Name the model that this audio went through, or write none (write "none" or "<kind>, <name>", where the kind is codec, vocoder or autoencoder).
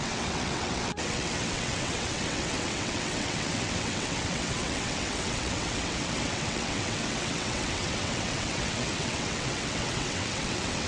vocoder, WaveNeXt